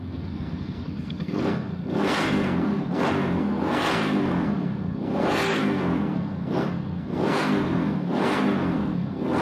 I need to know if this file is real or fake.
fake